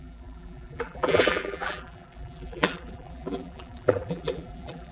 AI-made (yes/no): yes